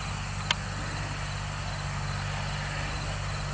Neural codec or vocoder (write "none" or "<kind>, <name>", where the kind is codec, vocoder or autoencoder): none